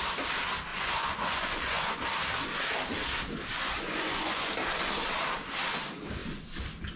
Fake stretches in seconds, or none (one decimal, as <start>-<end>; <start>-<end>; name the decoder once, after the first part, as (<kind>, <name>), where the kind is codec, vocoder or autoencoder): 0.7-2.0 (vocoder, Vocos); 3.5-4.5